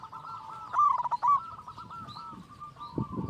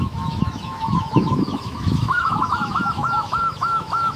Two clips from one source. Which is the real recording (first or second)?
first